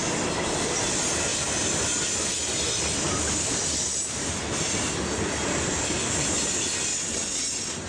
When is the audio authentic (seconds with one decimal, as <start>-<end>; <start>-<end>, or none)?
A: 0.0-6.9; 7.5-7.9